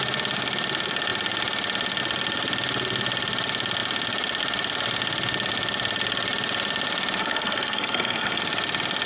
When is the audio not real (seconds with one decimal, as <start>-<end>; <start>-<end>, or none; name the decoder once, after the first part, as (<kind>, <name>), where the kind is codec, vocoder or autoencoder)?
7.2-8.4 (codec, SNAC)